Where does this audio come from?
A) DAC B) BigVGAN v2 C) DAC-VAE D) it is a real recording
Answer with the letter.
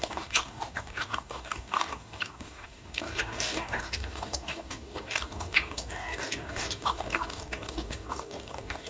A